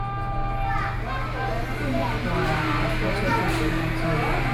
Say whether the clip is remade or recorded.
recorded